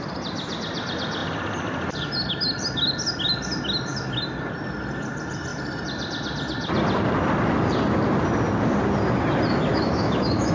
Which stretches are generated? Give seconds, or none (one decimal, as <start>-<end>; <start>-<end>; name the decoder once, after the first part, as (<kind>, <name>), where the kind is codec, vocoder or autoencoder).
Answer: 9.7-10.5 (autoencoder, DAC-VAE)